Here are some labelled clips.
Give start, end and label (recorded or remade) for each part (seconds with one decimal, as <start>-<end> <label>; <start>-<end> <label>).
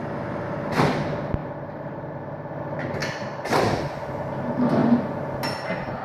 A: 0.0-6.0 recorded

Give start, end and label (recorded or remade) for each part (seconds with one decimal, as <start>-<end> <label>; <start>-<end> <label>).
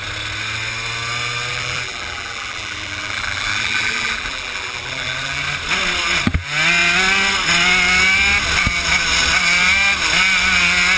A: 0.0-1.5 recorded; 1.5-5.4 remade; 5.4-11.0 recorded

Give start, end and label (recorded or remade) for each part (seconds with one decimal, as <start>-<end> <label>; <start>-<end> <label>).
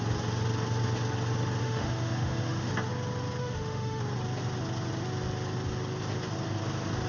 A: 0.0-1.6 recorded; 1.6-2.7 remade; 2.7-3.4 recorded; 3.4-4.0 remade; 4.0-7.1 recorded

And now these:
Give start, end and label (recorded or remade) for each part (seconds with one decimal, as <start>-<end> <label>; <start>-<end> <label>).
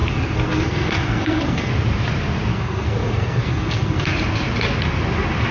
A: 0.0-1.7 remade; 1.7-2.5 recorded; 2.5-4.1 remade; 4.1-5.5 recorded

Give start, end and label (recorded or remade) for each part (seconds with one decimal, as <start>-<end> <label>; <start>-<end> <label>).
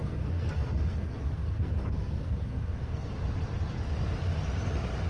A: 0.0-3.1 remade; 3.1-5.1 recorded